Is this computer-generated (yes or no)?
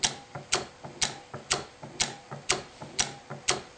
no